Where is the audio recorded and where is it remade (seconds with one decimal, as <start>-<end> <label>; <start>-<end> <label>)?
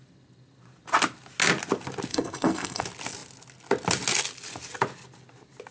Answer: 0.0-2.1 recorded; 2.1-2.8 remade; 2.8-5.7 recorded